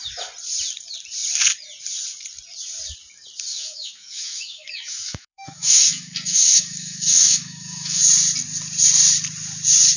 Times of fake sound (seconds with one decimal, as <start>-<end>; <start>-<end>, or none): 3.5-8.0